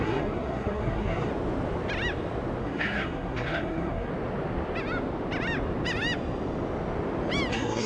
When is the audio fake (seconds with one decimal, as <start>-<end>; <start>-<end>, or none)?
0.0-1.3; 2.6-4.1; 7.5-7.9